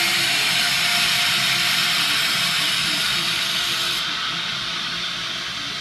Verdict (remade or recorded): recorded